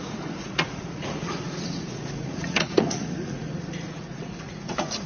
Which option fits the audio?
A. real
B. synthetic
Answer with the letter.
B